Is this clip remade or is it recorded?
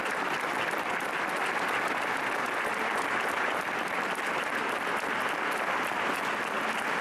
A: recorded